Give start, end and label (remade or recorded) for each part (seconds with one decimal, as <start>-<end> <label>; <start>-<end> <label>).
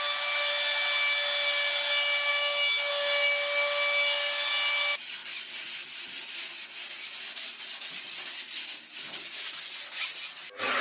0.0-2.3 recorded; 2.3-2.9 remade; 2.9-10.8 recorded